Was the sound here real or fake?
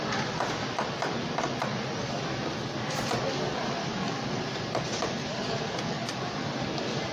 real